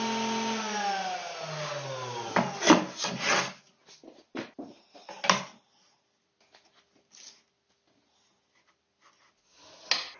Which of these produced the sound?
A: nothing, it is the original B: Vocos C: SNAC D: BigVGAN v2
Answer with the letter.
A